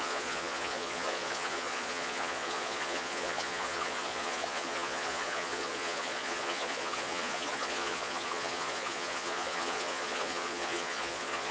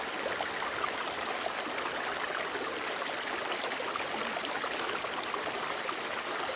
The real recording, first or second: second